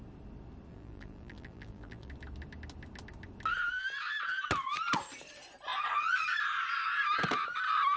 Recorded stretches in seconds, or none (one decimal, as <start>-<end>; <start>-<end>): 0.0-0.7; 2.1-8.0